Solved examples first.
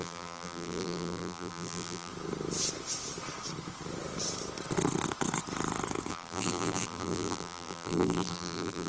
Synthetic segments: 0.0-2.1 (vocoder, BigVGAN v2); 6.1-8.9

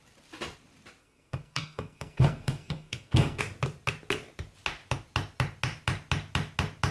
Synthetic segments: 1.0-3.4 (codec, SNAC)

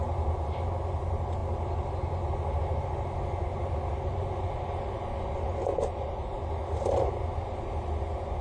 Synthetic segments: 0.0-1.4 (vocoder, BigVGAN v2); 4.5-8.4

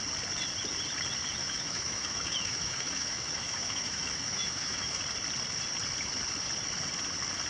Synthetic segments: 1.4-5.0 (autoencoder, DAC-VAE)

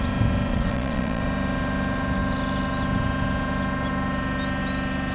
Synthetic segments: 0.5-1.2 (vocoder, WaveNeXt)

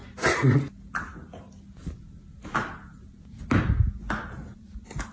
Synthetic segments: none

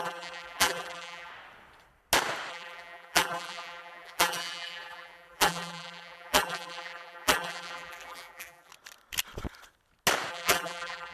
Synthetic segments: 0.0-1.3 (vocoder, BigVGAN v2); 2.5-8.7; 10.3-11.1